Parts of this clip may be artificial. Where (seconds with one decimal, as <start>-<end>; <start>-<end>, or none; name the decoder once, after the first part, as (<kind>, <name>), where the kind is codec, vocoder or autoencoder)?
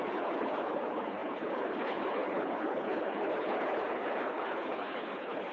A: 0.0-5.5 (codec, HILCodec)